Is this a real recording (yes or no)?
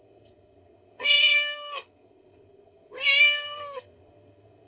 no